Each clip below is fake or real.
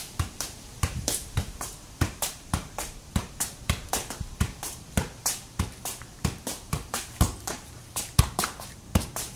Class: fake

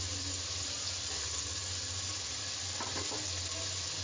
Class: real